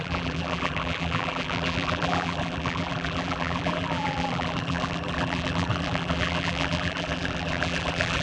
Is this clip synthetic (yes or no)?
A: yes